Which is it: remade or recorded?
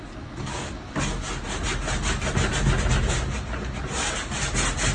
recorded